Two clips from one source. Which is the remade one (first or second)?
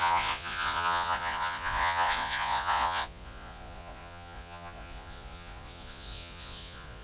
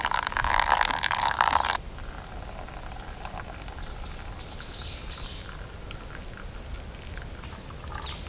first